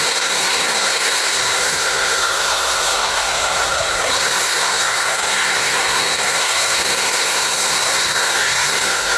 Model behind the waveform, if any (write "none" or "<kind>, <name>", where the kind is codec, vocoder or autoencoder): codec, SNAC